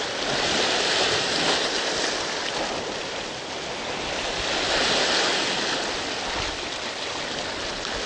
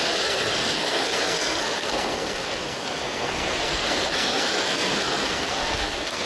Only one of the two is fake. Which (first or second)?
second